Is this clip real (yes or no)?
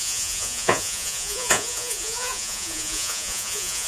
no